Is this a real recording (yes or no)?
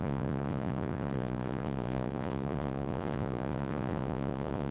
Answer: no